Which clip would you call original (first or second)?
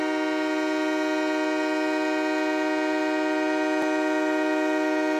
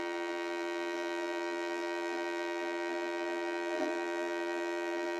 first